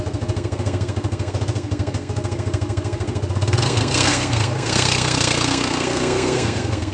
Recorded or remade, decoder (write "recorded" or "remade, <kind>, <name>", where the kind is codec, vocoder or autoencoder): remade, codec, SNAC